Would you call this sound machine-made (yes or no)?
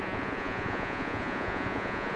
yes